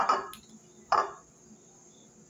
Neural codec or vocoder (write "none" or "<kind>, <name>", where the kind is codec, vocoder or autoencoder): none